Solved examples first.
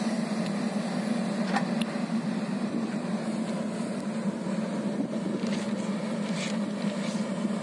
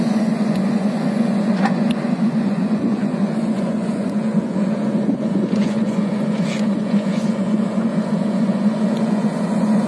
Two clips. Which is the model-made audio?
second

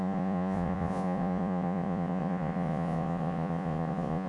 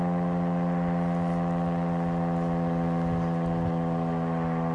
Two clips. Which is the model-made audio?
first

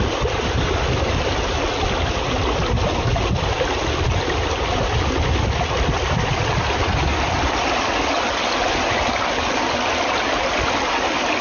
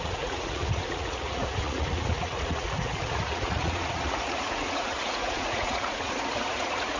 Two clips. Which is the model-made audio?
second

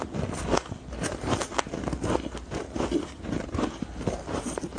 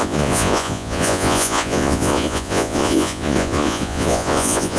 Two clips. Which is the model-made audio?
second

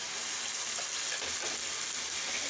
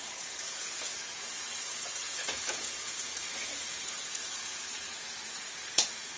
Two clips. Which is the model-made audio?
second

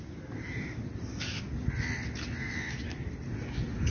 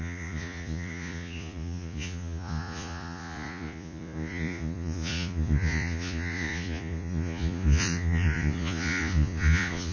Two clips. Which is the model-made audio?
second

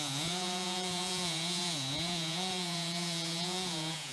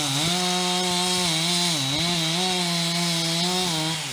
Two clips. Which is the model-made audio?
first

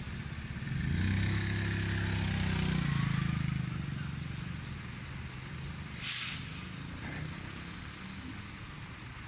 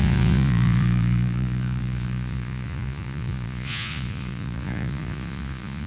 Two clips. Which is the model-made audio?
second